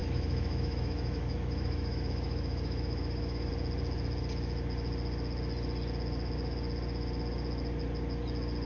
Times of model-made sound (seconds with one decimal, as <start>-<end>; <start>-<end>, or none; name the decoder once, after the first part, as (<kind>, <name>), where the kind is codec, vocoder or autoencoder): 0.0-3.5 (autoencoder, DAC-VAE)